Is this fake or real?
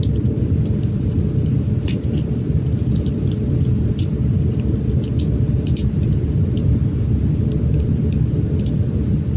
real